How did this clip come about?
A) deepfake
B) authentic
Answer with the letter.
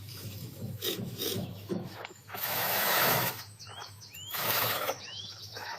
A